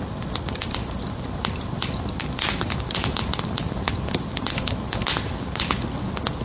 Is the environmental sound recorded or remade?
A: recorded